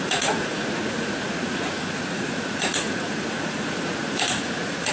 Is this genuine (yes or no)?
no